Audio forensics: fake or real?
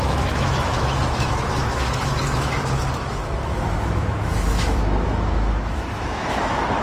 fake